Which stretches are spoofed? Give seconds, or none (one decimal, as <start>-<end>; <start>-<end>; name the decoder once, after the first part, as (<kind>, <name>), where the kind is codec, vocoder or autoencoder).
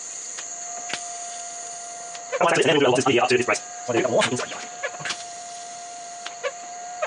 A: 0.0-0.5 (vocoder, BigVGAN v2); 4.8-7.1